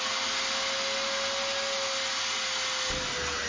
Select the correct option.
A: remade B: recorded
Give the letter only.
B